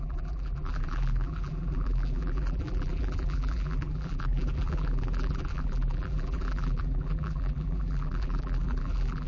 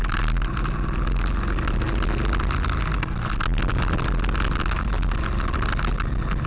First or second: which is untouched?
second